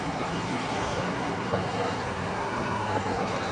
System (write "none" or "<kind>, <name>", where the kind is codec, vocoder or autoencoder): codec, SNAC